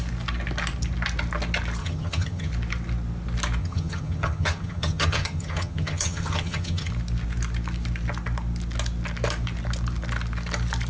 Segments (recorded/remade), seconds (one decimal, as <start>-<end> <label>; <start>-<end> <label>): 0.0-1.8 recorded; 1.8-2.5 remade; 2.5-3.6 recorded; 3.6-6.9 remade; 6.9-10.9 recorded

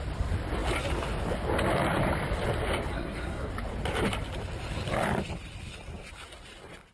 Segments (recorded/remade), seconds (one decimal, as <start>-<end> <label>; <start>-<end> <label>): 0.0-2.9 recorded; 2.9-3.5 remade; 3.5-6.9 recorded

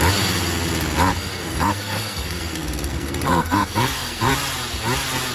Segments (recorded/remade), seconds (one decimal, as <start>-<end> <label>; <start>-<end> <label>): 0.0-1.1 recorded; 1.1-4.3 remade; 4.3-5.3 recorded

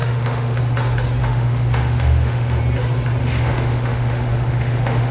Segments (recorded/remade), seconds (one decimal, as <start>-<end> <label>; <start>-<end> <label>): 0.0-0.6 remade; 0.6-1.2 recorded; 1.2-2.6 remade; 2.6-3.2 recorded; 3.2-5.1 remade

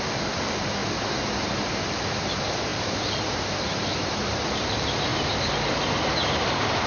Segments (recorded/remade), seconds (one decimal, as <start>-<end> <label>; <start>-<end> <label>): 0.0-0.8 remade; 0.8-1.5 recorded; 1.5-5.1 remade; 5.1-6.0 recorded; 6.0-6.9 remade

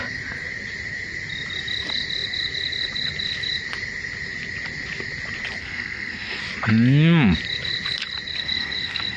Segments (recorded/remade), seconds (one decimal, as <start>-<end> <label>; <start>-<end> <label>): 0.0-5.6 recorded; 5.6-6.4 remade; 6.4-8.4 recorded; 8.4-9.2 remade

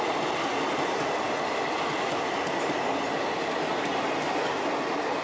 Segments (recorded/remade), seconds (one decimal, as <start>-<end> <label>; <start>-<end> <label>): 0.0-5.2 recorded

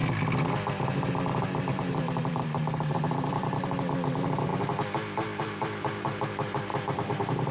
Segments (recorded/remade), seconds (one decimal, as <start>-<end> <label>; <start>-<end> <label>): 0.0-1.7 recorded; 1.7-4.5 remade; 4.5-5.4 recorded; 5.4-7.5 remade